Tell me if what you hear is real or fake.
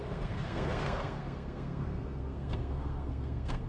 fake